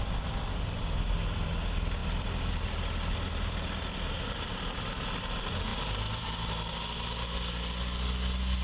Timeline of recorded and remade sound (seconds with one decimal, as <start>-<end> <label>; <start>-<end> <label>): 0.0-5.7 recorded; 5.7-6.7 remade; 6.7-8.6 recorded